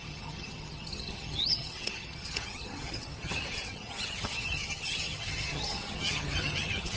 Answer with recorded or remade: remade